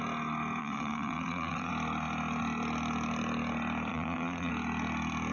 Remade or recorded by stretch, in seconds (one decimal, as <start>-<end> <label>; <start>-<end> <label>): 0.0-0.6 recorded; 0.6-1.7 remade; 1.7-3.9 recorded; 3.9-4.5 remade; 4.5-5.3 recorded